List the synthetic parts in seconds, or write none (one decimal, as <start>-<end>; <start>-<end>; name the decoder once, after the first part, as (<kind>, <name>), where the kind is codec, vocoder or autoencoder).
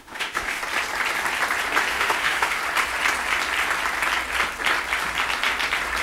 0.0-0.6 (autoencoder, DAC-VAE); 1.9-2.6